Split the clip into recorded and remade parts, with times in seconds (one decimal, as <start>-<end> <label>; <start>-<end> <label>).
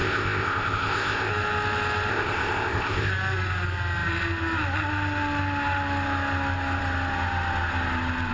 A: 0.0-1.3 remade; 1.3-2.1 recorded; 2.1-3.1 remade; 3.1-8.3 recorded